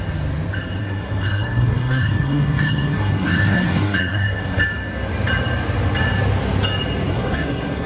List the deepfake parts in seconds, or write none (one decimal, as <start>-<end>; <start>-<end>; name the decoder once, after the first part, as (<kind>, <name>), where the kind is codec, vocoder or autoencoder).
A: 0.8-4.6 (codec, SNAC); 7.1-7.9